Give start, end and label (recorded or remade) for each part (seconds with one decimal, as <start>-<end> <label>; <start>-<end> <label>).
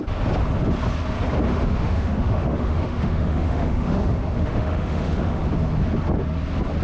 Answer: 0.0-1.5 recorded; 1.5-5.4 remade; 5.4-6.8 recorded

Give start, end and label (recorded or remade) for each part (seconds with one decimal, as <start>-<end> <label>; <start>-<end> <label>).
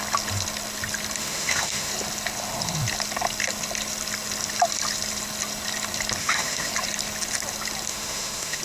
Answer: 0.0-1.2 recorded; 1.2-1.9 remade; 1.9-6.2 recorded; 6.2-6.7 remade; 6.7-7.9 recorded; 7.9-8.6 remade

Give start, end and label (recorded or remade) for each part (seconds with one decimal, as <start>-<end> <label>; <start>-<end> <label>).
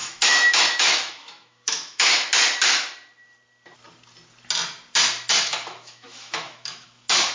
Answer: 0.0-2.3 remade; 2.3-5.4 recorded; 5.4-7.3 remade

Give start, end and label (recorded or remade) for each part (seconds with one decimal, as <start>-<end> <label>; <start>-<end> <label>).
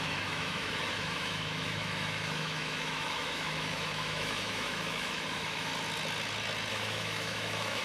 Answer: 0.0-5.7 remade; 5.7-6.7 recorded; 6.7-7.8 remade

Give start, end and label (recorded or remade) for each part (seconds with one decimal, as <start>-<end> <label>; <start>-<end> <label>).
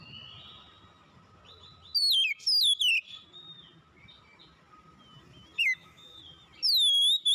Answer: 0.0-5.6 recorded; 5.6-6.2 remade; 6.2-7.3 recorded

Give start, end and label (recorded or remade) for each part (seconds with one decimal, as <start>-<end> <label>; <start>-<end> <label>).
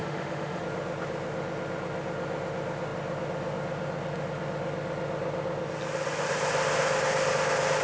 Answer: 0.0-0.6 remade; 0.6-7.8 recorded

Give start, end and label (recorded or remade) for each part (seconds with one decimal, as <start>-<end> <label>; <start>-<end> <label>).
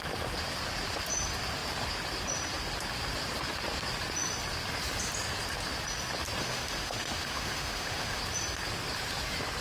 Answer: 0.0-6.4 recorded; 6.4-8.2 remade; 8.2-9.6 recorded